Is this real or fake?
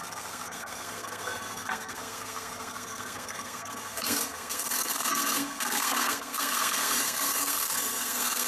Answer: fake